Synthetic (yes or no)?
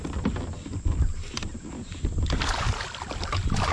no